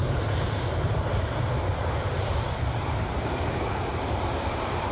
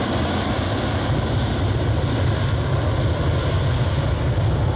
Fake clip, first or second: first